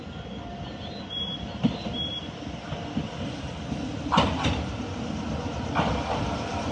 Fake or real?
real